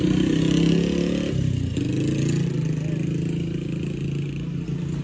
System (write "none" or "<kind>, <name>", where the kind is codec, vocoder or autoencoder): none